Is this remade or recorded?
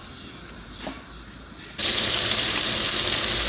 recorded